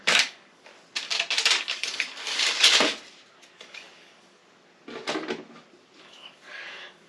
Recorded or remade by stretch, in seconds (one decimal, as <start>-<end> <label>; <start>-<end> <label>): 0.0-0.7 remade; 0.7-1.6 recorded; 1.6-2.9 remade; 2.9-3.6 recorded; 3.6-4.4 remade; 4.4-6.0 recorded; 6.0-7.1 remade